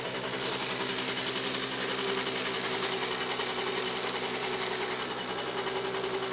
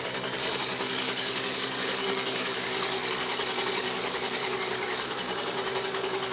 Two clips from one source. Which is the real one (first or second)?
first